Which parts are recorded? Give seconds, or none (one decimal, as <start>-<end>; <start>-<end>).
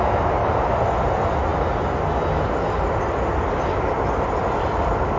0.0-5.2